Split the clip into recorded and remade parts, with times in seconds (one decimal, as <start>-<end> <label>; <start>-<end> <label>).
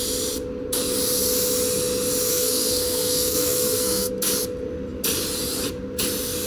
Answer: 0.0-2.3 recorded; 2.3-4.1 remade; 4.1-6.5 recorded